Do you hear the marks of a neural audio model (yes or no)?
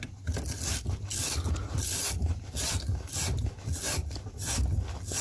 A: no